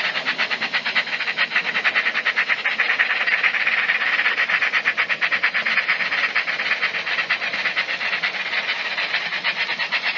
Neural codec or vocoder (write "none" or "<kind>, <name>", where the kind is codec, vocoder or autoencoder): none